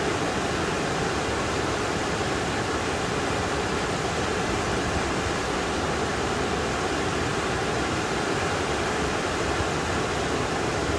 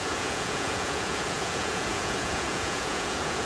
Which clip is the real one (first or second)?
first